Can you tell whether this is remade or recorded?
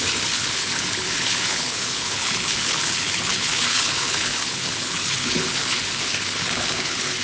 remade